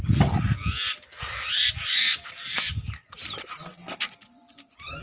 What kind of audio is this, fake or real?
real